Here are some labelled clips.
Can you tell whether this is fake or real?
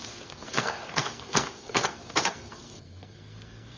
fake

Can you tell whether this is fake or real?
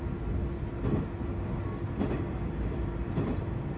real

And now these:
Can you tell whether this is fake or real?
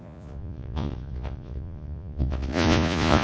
fake